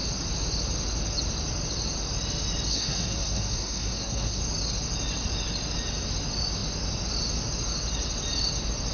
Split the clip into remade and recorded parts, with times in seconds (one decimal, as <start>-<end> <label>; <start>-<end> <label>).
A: 0.0-2.7 recorded; 2.7-4.4 remade; 4.4-8.9 recorded